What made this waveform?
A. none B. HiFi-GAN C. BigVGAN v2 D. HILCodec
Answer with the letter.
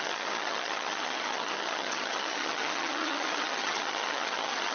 B